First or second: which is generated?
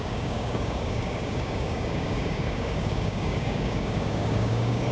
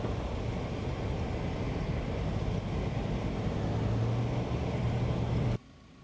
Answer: first